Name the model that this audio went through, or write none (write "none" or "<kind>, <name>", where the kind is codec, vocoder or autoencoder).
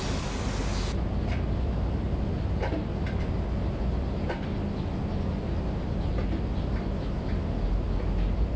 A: none